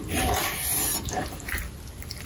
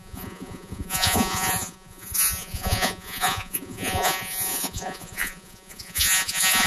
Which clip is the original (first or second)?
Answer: first